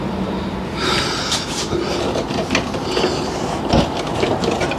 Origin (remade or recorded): recorded